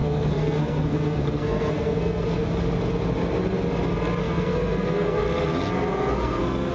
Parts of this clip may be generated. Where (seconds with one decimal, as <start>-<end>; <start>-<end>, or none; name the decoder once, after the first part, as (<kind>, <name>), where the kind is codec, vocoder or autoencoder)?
0.0-2.4 (codec, SNAC); 4.2-5.2; 5.9-6.7